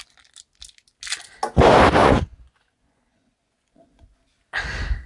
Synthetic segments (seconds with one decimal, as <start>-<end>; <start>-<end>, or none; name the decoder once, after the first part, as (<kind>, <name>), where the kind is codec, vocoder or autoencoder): 2.0-4.2 (vocoder, Vocos)